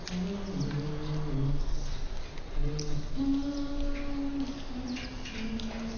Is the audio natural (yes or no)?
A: yes